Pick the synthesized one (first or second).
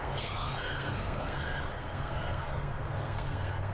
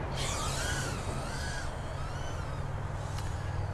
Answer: first